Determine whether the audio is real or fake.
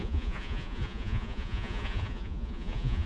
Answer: fake